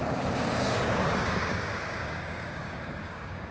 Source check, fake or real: fake